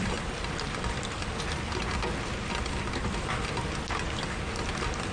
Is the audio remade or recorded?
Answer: recorded